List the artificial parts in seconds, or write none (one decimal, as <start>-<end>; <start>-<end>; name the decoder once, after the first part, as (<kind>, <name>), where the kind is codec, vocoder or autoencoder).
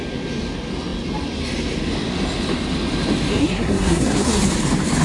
3.3-4.4 (codec, SNAC)